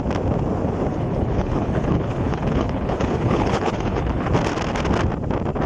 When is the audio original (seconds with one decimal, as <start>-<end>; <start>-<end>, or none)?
0.0-0.9; 4.3-5.7

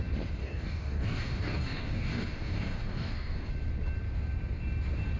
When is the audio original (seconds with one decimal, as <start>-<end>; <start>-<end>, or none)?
0.0-0.4; 3.5-5.2

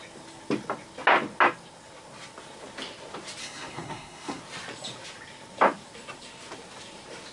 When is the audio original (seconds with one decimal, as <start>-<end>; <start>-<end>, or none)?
0.0-3.4; 4.4-7.3

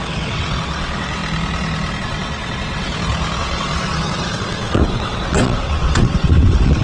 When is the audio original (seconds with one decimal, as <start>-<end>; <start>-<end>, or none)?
1.2-2.0; 2.9-3.4

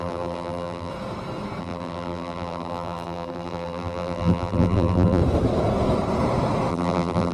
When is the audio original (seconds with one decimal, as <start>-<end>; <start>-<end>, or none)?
0.9-1.6; 5.2-6.7

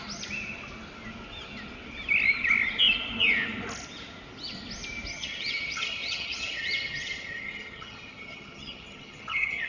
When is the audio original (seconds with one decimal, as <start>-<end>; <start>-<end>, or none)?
0.0-5.1

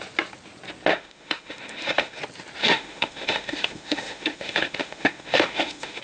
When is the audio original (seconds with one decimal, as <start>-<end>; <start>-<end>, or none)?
0.0-0.9; 2.2-2.6